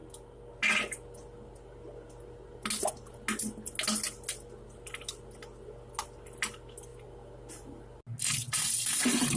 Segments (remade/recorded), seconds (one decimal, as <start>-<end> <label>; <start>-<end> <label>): 0.0-9.4 recorded